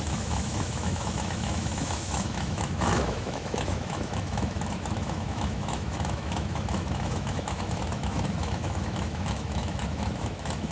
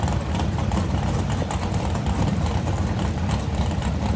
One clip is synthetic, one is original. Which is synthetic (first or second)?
first